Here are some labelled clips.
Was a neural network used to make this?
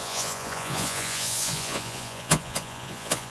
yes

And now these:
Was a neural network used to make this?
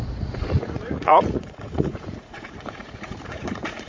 yes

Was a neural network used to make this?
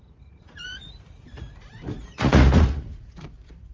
yes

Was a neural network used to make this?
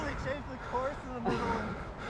no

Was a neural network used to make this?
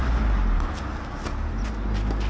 no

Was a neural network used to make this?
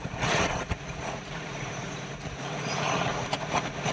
yes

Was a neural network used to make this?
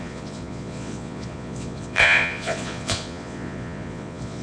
yes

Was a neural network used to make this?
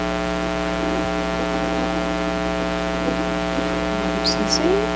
no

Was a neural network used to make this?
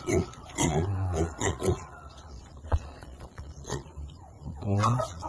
yes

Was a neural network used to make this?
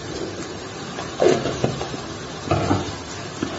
no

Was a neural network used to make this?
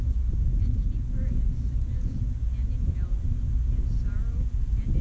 yes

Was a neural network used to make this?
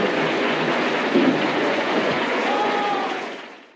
yes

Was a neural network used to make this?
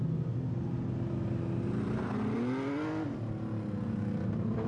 no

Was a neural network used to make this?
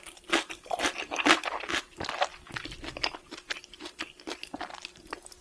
no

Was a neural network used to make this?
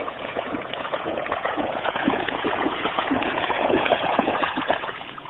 yes